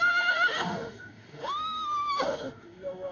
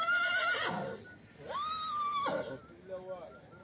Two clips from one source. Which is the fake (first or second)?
first